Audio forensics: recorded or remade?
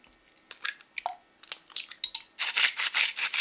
recorded